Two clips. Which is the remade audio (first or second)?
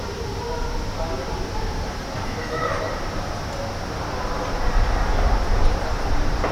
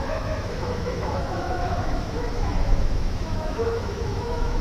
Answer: second